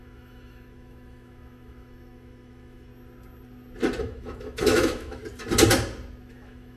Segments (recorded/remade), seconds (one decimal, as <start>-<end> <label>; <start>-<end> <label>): 0.0-2.9 remade; 2.9-4.0 recorded; 4.0-5.2 remade; 5.2-6.3 recorded; 6.3-6.8 remade